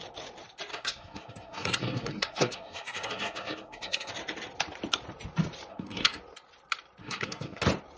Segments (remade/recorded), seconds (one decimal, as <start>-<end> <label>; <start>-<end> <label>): 0.0-0.7 recorded; 0.7-4.1 remade; 4.1-5.7 recorded; 5.7-6.2 remade; 6.2-7.0 recorded; 7.0-7.6 remade; 7.6-8.0 recorded

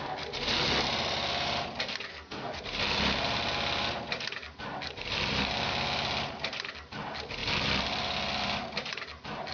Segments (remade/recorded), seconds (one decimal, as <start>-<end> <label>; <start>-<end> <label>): 0.0-2.1 recorded; 2.1-2.6 remade; 2.6-9.5 recorded

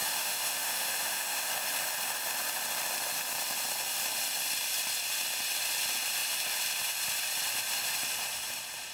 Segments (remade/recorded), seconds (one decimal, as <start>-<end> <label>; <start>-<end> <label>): 0.0-1.5 remade; 1.5-8.9 recorded

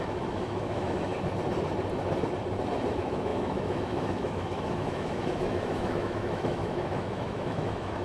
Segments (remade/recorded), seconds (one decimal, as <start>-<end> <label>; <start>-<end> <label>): 0.0-1.1 remade; 1.1-2.9 recorded; 2.9-8.0 remade

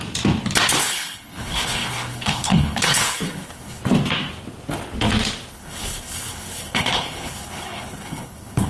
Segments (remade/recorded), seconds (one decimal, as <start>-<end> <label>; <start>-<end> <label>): 0.0-0.8 recorded; 0.8-3.8 remade; 3.8-5.5 recorded; 5.5-8.7 remade

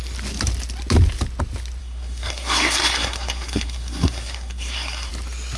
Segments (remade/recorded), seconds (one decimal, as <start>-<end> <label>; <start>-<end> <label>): 0.0-1.8 recorded; 1.8-5.1 remade; 5.1-5.6 recorded